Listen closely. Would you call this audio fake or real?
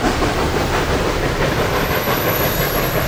fake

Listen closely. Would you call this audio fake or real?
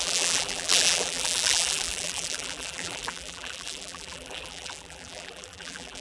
fake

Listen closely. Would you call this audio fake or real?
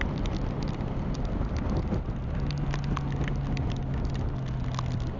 real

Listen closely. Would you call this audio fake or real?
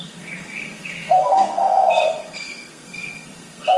fake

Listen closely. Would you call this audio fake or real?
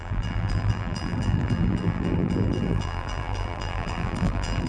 fake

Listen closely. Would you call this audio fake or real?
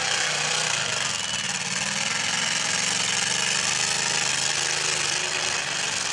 real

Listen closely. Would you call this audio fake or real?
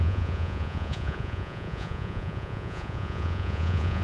fake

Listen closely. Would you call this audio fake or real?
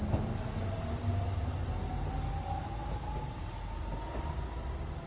real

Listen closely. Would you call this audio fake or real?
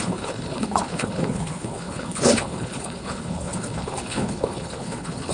fake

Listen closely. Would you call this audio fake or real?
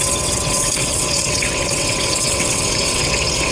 fake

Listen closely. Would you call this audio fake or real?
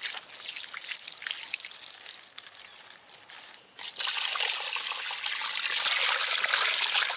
real